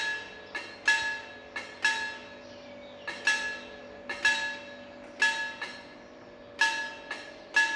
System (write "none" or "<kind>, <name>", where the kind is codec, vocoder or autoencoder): none